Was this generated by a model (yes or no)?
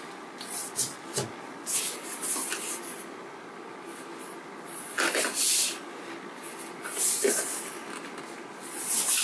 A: no